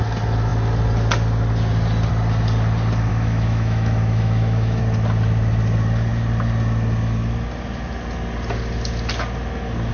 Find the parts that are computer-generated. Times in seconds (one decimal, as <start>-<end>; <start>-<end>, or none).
3.1-4.8